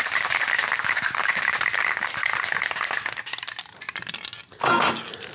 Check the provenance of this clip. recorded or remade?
recorded